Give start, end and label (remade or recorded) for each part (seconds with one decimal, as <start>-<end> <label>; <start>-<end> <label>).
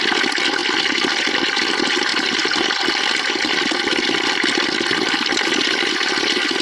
0.0-0.6 recorded; 0.6-1.3 remade; 1.3-2.1 recorded; 2.1-5.9 remade; 5.9-6.6 recorded